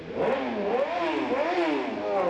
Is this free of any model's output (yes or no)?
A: yes